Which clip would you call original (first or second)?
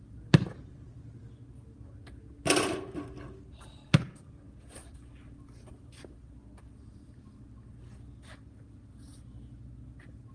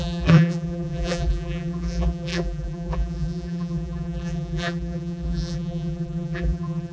first